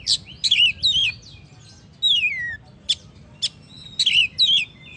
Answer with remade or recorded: recorded